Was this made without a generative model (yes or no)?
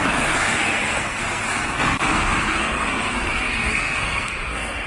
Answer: no